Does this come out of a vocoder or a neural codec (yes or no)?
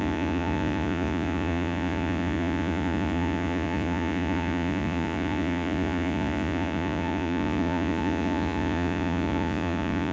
yes